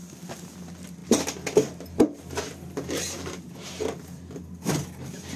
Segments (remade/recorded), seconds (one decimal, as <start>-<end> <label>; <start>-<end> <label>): 0.0-5.4 recorded